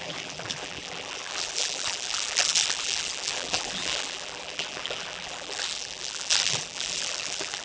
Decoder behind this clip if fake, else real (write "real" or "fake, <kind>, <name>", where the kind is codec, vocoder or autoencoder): fake, vocoder, BigVGAN v2